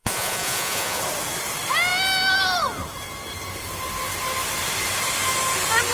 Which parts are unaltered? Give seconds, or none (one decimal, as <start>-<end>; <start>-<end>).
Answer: 1.0-5.9